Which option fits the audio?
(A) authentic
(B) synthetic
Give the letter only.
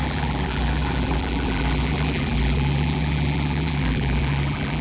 B